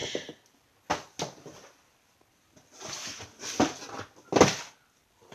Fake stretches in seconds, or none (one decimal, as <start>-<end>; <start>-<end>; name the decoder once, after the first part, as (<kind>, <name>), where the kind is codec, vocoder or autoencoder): none